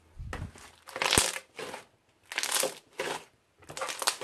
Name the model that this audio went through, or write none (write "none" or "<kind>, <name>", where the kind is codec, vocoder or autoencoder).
none